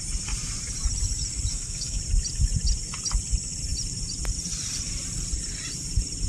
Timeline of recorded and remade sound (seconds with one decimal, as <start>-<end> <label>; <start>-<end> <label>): 0.0-1.5 recorded; 1.5-2.0 remade; 2.0-6.3 recorded